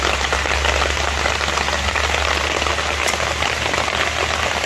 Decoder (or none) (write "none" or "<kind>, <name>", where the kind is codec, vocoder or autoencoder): none